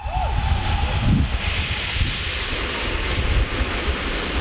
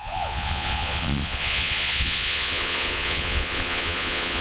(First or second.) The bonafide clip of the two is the first